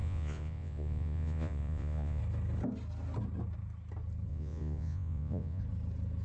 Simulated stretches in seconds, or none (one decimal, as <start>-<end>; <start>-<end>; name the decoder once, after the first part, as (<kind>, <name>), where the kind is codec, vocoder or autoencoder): 0.0-2.2 (vocoder, Vocos); 4.3-5.6